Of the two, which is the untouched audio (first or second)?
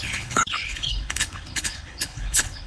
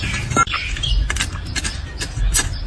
second